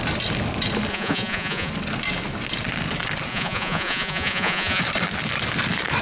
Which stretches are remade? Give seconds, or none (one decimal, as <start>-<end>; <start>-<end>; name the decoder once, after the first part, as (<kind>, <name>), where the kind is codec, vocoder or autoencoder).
0.9-1.7 (vocoder, Vocos); 3.3-4.8